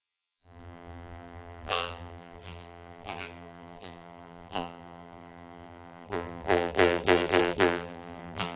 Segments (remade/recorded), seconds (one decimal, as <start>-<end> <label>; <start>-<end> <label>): 0.0-8.6 remade